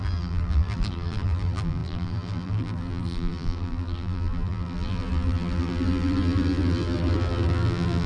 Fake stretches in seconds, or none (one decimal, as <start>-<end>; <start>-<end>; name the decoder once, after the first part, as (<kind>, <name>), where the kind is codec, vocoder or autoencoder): 0.0-8.1 (vocoder, BigVGAN v2)